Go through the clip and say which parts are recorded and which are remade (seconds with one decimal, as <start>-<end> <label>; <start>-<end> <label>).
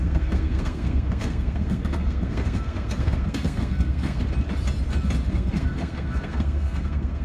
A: 0.0-4.2 remade; 4.2-5.3 recorded; 5.3-7.2 remade